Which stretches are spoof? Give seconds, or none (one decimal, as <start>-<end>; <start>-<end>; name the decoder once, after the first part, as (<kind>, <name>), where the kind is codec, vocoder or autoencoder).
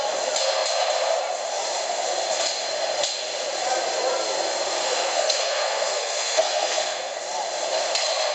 4.8-7.2 (codec, SNAC)